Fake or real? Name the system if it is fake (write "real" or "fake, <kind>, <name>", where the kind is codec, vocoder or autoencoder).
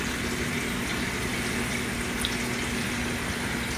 real